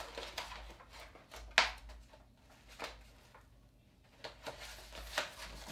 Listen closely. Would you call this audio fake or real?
real